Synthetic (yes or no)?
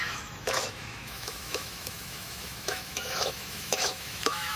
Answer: yes